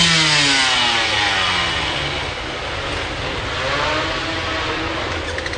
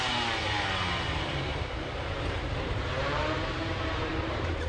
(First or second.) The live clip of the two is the first